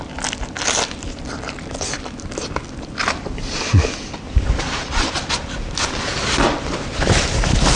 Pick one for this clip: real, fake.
real